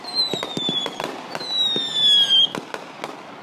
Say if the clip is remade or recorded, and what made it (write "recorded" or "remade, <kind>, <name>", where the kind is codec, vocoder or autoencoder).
recorded